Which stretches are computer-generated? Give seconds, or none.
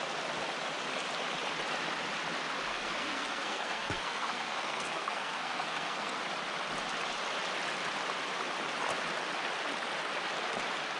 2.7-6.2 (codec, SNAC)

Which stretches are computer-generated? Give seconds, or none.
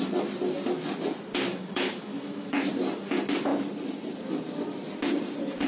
1.5-2.7 (autoencoder, DAC-VAE)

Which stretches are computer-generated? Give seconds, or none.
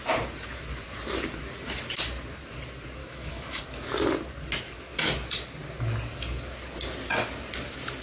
3.0-3.6 (autoencoder, DAC-VAE)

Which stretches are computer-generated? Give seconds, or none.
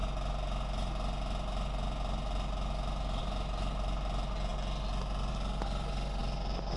none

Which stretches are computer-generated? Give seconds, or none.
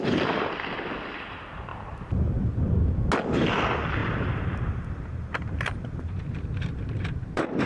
1.7-2.6 (vocoder, BigVGAN v2); 4.0-7.7